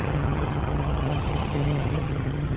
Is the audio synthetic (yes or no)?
yes